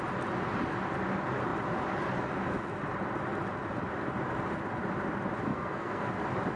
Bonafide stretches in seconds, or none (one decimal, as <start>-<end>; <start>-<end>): 0.0-5.5; 6.1-6.6